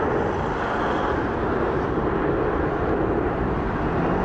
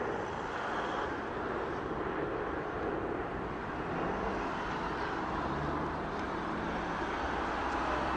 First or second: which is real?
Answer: first